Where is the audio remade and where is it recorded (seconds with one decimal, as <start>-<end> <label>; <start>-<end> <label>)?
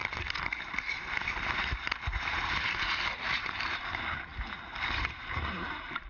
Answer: 0.0-1.5 recorded; 1.5-4.3 remade; 4.3-5.0 recorded; 5.0-6.1 remade